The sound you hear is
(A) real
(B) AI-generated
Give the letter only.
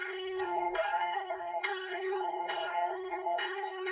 B